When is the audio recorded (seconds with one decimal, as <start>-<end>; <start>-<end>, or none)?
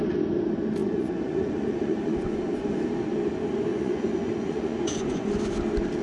0.0-0.8; 2.4-3.7; 5.3-6.0